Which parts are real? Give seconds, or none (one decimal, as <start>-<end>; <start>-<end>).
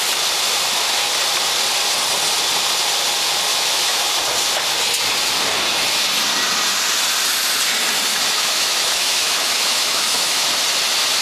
0.0-3.5; 4.1-8.1; 10.5-11.2